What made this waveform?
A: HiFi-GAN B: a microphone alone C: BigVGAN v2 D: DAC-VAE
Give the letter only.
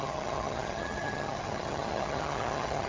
A